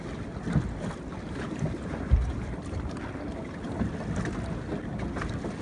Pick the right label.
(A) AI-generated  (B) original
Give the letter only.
B